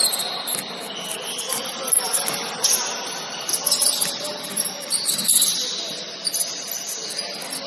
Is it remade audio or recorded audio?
recorded